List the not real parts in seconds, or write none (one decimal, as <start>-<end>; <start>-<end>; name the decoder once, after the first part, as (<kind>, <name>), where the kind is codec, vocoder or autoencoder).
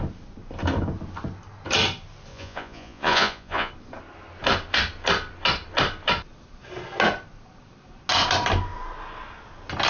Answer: 2.3-3.7 (vocoder, Vocos)